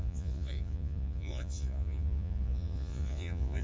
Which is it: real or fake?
fake